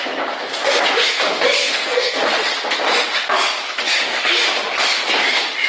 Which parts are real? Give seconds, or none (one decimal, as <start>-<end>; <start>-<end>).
0.0-1.6; 2.2-5.7